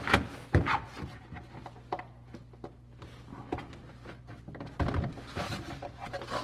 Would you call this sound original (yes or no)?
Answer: yes